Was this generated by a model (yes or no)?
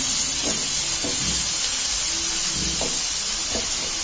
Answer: no